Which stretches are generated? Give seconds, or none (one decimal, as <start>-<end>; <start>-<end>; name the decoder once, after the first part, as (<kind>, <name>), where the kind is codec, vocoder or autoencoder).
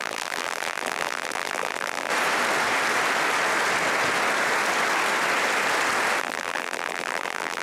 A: 0.0-2.1 (vocoder, BigVGAN v2); 6.2-7.6